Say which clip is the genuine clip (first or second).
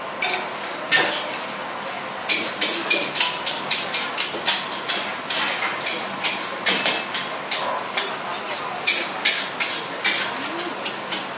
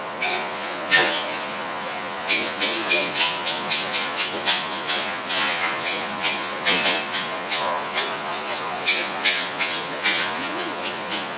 first